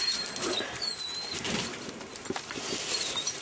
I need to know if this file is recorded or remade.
remade